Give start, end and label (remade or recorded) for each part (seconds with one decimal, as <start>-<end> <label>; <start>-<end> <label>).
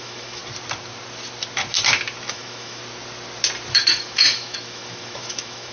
0.0-0.4 remade; 0.4-2.3 recorded; 2.3-2.8 remade; 2.8-3.7 recorded; 3.7-5.7 remade